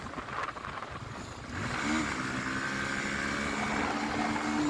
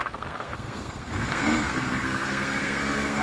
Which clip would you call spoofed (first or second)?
second